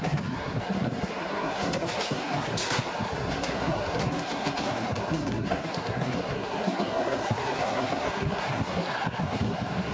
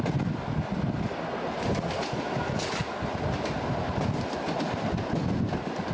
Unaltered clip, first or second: second